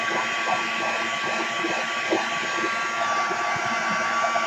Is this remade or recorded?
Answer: recorded